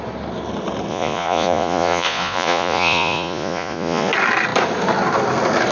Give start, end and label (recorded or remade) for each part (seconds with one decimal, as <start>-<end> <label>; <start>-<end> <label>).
0.0-0.9 recorded; 0.9-4.1 remade; 4.1-5.7 recorded

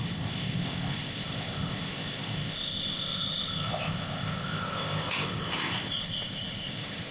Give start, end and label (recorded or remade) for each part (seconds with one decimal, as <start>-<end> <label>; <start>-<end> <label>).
0.0-7.1 remade

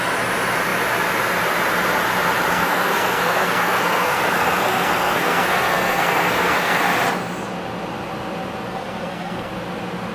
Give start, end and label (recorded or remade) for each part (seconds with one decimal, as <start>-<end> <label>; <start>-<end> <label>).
0.0-2.5 recorded; 2.5-6.8 remade; 6.8-8.7 recorded; 8.7-9.5 remade; 9.5-10.1 recorded

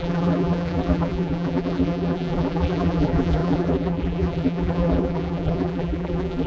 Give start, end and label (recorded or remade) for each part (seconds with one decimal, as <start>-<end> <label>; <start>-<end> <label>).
0.0-6.5 remade